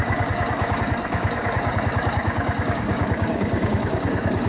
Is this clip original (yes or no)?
no